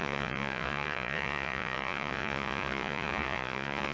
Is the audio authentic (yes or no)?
no